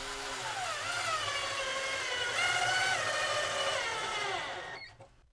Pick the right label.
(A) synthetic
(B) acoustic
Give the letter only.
B